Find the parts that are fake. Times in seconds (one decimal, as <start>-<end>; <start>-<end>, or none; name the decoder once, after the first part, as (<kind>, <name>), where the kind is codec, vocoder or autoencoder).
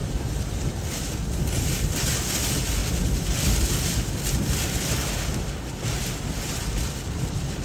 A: 0.0-0.7 (vocoder, BigVGAN v2)